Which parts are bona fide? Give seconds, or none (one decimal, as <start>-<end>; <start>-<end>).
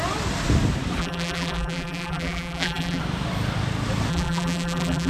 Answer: 0.0-1.0; 3.0-4.1